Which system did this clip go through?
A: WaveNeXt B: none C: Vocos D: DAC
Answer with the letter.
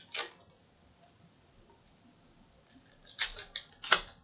B